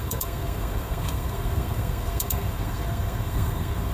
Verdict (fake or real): fake